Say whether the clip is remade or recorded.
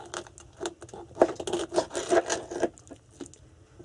recorded